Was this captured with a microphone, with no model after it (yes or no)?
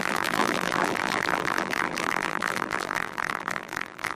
no